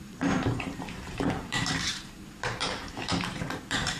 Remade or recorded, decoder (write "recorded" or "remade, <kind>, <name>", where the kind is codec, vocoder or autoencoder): remade, vocoder, BigVGAN v2